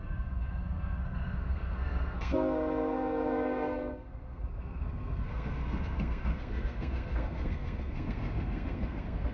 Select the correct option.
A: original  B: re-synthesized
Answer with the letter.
B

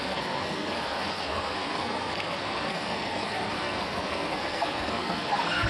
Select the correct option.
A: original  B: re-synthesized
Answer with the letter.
B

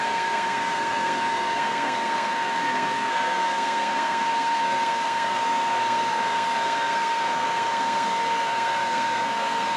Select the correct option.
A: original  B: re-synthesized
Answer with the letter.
B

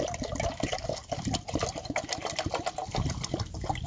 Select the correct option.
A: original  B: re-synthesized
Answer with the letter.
A